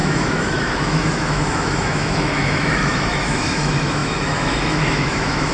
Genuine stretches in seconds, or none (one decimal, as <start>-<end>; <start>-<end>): none